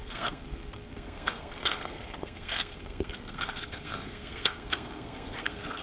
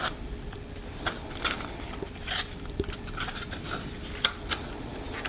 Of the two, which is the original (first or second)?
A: second